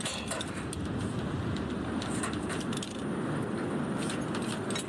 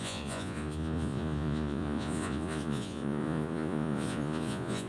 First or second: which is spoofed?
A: second